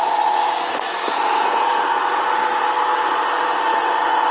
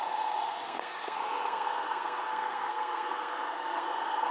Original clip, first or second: first